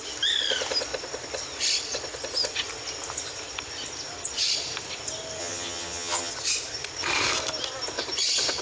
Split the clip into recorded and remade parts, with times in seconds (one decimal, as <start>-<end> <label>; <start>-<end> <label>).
0.0-5.4 recorded; 5.4-6.3 remade; 6.3-8.6 recorded